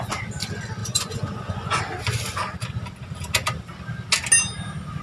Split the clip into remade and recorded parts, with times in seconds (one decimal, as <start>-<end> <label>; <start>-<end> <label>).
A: 0.0-0.8 recorded; 0.8-1.8 remade; 1.8-5.0 recorded

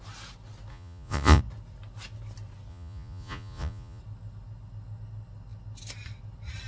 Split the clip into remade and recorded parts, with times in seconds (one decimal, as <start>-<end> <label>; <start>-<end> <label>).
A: 0.0-0.7 recorded; 0.7-1.4 remade; 1.4-2.7 recorded; 2.7-4.0 remade; 4.0-6.7 recorded

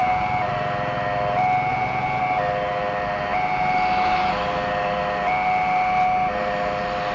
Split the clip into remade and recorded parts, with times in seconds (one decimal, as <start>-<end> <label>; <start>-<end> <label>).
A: 0.0-1.7 recorded; 1.7-2.2 remade; 2.2-7.1 recorded

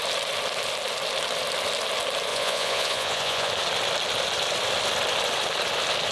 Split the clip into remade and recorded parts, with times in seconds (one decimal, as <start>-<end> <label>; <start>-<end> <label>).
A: 0.0-2.3 recorded; 2.3-3.5 remade; 3.5-6.1 recorded

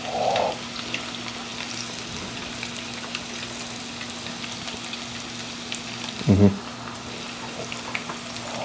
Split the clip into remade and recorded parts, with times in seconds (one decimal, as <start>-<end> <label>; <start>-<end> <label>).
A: 0.0-8.6 recorded

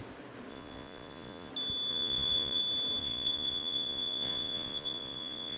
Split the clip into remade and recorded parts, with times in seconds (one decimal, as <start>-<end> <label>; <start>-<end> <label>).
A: 0.0-0.5 recorded; 0.5-1.5 remade; 1.5-1.9 recorded; 1.9-2.6 remade; 2.6-3.0 recorded; 3.0-5.6 remade